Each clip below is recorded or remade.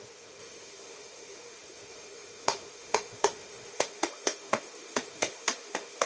remade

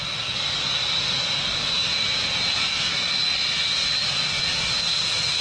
recorded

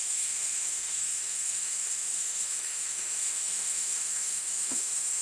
remade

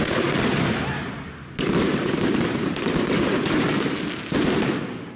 recorded